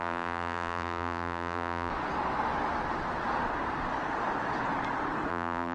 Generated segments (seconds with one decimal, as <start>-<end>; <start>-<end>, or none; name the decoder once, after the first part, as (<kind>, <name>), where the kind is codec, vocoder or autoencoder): 0.0-1.9 (vocoder, BigVGAN v2); 5.3-5.7